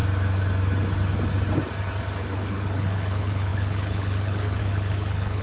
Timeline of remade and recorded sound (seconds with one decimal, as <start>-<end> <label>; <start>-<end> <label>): 0.0-2.2 recorded; 2.2-5.4 remade